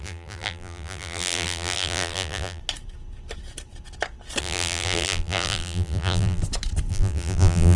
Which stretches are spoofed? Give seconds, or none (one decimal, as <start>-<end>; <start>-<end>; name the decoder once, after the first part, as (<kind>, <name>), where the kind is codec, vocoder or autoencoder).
0.0-2.6 (vocoder, BigVGAN v2); 4.4-6.4; 6.9-7.8